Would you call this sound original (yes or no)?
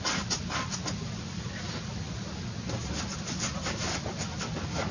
yes